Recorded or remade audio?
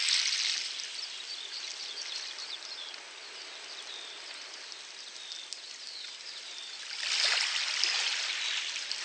recorded